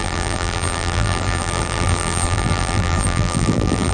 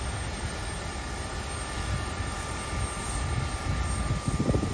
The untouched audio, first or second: second